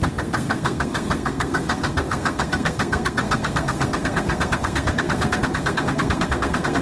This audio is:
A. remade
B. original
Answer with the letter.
A